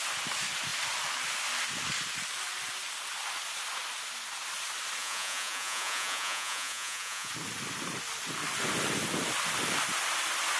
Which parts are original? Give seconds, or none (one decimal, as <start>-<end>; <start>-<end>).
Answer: 0.0-5.0; 7.3-10.6